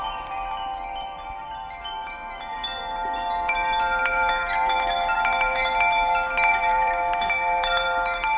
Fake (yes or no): yes